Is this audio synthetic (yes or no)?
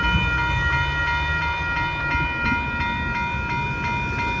no